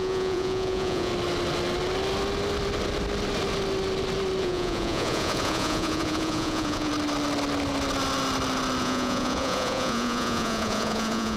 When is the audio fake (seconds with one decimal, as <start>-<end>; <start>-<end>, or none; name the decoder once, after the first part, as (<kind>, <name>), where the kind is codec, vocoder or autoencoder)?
0.0-1.1 (vocoder, Vocos); 4.4-6.9; 8.8-11.4